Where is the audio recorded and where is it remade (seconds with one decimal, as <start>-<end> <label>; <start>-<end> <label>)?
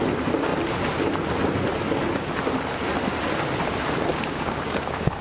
0.0-4.1 recorded; 4.1-5.2 remade